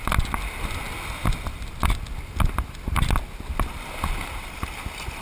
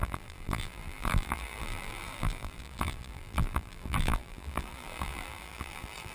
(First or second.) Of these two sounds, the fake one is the second